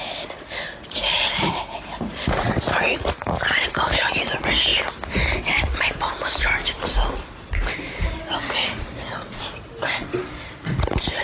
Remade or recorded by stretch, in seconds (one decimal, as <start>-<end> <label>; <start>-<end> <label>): 0.0-4.7 remade; 4.7-8.2 recorded; 8.2-9.7 remade; 9.7-11.2 recorded